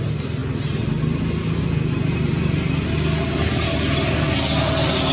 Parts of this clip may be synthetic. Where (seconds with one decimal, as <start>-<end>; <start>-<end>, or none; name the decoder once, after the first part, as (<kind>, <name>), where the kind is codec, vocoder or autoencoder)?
none